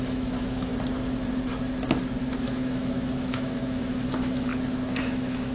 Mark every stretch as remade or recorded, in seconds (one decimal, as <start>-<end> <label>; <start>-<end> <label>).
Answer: 0.0-0.7 remade; 0.7-2.4 recorded; 2.4-4.5 remade; 4.5-5.0 recorded; 5.0-5.5 remade